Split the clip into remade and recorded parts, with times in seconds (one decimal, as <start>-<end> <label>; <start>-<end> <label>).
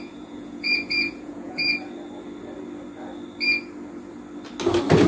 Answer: 0.0-1.7 remade; 1.7-5.1 recorded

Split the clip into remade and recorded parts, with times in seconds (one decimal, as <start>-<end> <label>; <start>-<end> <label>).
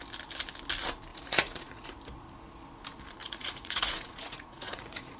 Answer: 0.0-1.1 recorded; 1.1-1.9 remade; 1.9-3.2 recorded; 3.2-5.2 remade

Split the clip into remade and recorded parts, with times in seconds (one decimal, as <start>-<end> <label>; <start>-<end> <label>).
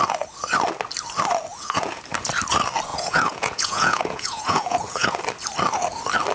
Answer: 0.0-1.5 recorded; 1.5-2.0 remade; 2.0-2.9 recorded; 2.9-5.2 remade; 5.2-6.3 recorded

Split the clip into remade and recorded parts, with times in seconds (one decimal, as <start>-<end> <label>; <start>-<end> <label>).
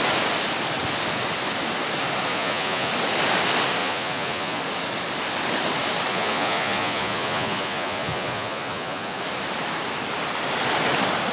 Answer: 0.0-2.3 recorded; 2.3-2.9 remade; 2.9-3.8 recorded; 3.8-4.6 remade; 4.6-6.1 recorded; 6.1-9.2 remade; 9.2-11.3 recorded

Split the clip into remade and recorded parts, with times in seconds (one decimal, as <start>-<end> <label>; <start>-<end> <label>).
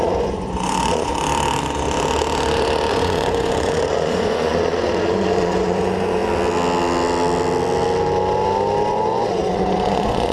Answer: 0.0-1.1 remade; 1.1-2.9 recorded; 2.9-6.2 remade; 6.2-8.9 recorded; 8.9-10.3 remade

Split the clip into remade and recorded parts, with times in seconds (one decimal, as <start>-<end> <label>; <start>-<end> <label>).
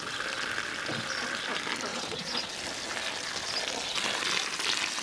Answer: 0.0-1.9 recorded; 1.9-2.5 remade; 2.5-5.0 recorded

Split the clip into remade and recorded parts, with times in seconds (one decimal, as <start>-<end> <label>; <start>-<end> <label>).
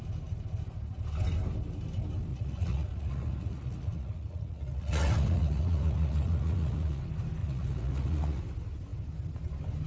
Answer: 0.0-2.3 recorded; 2.3-7.0 remade; 7.0-7.4 recorded; 7.4-8.4 remade; 8.4-9.9 recorded